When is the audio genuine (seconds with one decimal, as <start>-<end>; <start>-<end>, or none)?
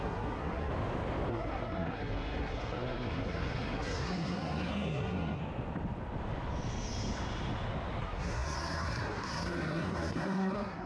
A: 0.7-1.3; 5.4-8.0